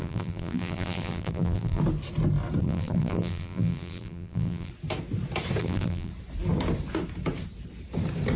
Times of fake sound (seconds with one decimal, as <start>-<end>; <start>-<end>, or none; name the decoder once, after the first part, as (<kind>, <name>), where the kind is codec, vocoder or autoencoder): 0.0-1.8 (vocoder, BigVGAN v2); 2.6-4.7; 5.6-6.1